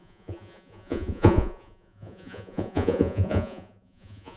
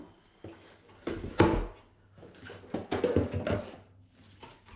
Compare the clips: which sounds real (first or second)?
second